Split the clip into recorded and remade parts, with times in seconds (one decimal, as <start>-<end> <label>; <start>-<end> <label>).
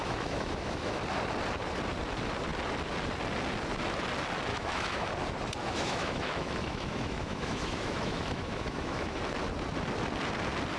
0.0-1.0 remade; 1.0-4.5 recorded; 4.5-5.1 remade; 5.1-5.6 recorded; 5.6-9.2 remade; 9.2-10.8 recorded